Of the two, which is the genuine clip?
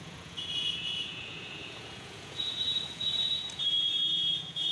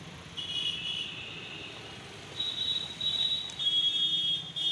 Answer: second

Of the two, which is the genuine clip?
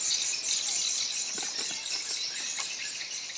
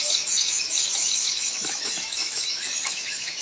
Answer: first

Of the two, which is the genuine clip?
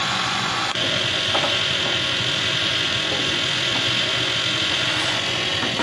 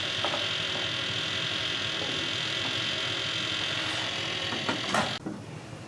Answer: second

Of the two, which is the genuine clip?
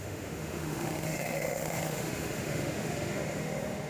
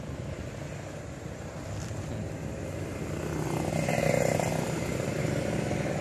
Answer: second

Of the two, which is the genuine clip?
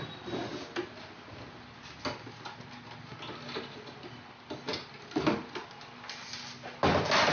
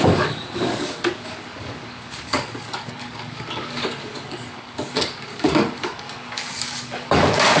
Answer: first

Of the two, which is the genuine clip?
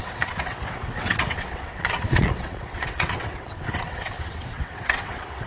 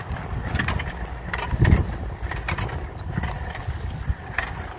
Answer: second